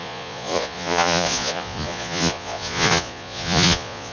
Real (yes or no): no